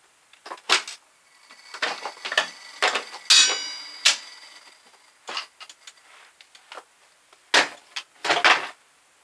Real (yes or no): yes